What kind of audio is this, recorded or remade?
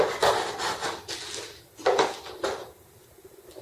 recorded